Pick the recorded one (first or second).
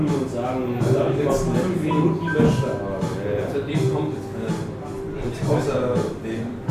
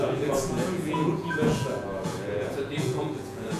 first